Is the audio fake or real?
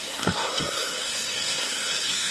fake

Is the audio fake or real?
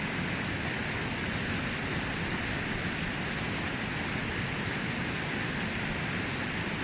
real